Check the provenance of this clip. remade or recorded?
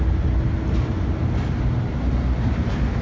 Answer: recorded